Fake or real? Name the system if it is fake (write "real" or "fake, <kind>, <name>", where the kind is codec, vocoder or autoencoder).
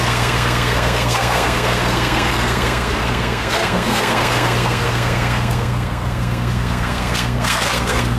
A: fake, codec, SNAC